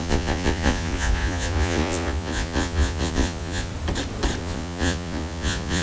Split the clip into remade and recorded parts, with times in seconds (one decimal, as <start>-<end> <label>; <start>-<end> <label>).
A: 0.0-3.7 remade; 3.7-4.4 recorded; 4.4-5.8 remade